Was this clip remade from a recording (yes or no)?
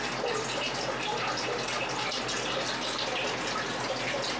no